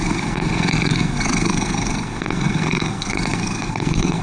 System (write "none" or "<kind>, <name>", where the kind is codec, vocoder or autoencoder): codec, SNAC